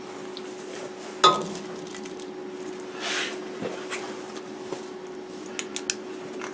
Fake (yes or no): no